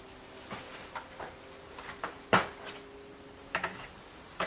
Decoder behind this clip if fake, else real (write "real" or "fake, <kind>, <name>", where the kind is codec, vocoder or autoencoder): real